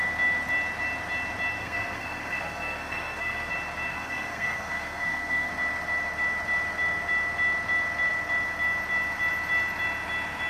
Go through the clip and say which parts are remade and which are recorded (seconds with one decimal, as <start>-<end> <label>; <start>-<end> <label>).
0.0-1.6 recorded; 1.6-3.5 remade; 3.5-3.9 recorded; 3.9-5.5 remade; 5.5-10.5 recorded